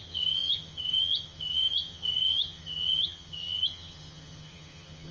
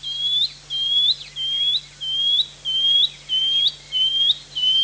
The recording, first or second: second